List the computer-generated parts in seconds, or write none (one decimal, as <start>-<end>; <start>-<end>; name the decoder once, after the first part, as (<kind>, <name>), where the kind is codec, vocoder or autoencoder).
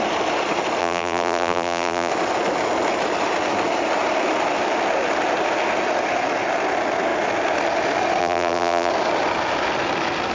0.8-2.1 (vocoder, BigVGAN v2); 8.2-8.9